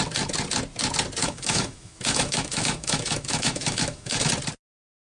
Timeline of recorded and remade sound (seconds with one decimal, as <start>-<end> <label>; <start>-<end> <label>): 0.0-1.2 recorded; 1.2-4.3 remade; 4.3-5.2 recorded